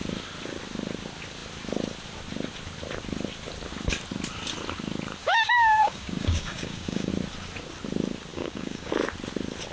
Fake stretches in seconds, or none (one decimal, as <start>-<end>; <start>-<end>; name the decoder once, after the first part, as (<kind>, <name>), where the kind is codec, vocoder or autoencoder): 5.2-7.1 (codec, DAC); 8.3-8.9